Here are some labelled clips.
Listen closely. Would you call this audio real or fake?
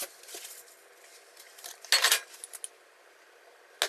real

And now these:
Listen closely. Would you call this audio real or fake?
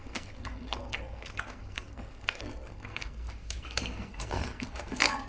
fake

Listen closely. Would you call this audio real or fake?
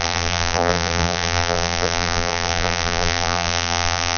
fake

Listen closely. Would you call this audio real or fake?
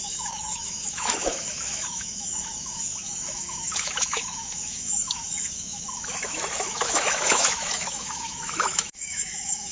fake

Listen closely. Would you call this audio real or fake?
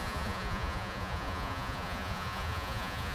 fake